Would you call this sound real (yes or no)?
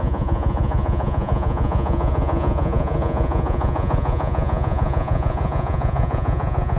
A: no